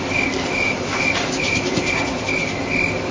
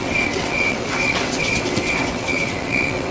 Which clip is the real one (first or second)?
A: first